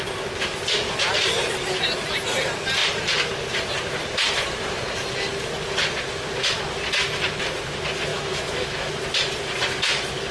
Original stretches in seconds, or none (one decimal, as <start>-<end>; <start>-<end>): 0.0-8.1; 8.9-10.3